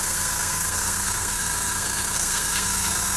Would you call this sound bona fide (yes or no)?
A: no